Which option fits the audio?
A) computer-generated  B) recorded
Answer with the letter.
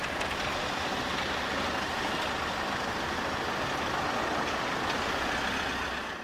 B